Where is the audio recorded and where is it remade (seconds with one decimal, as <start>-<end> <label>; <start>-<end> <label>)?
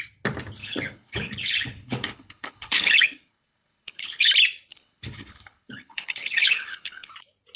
0.0-0.6 recorded; 0.6-4.3 remade; 4.3-4.7 recorded; 4.7-7.1 remade; 7.1-7.6 recorded